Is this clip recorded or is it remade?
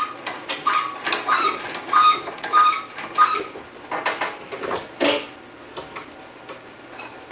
recorded